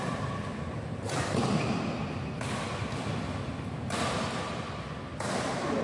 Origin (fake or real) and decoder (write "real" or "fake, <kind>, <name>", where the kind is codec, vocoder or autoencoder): fake, vocoder, BigVGAN v2